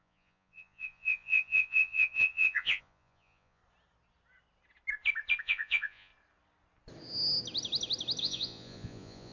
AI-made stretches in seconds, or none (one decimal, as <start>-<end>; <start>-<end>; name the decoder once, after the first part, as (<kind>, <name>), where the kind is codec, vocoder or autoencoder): 0.0-3.6 (vocoder, Vocos); 5.4-6.1; 8.2-9.3